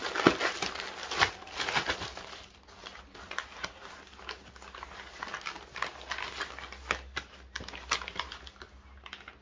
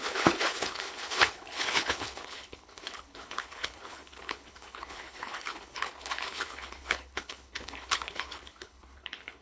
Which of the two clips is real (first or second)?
first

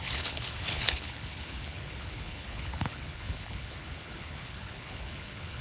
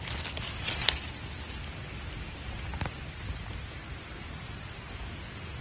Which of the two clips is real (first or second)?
second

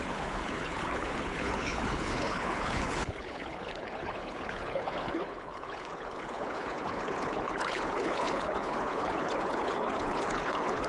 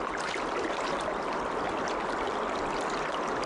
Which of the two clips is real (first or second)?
second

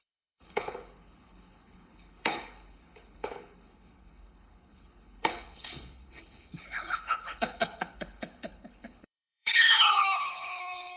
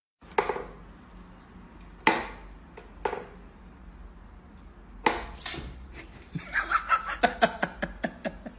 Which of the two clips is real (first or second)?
second